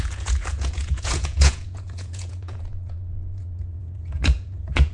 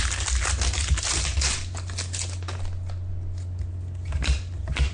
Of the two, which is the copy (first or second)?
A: first